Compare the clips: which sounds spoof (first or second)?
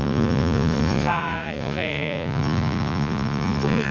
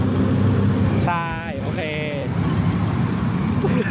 first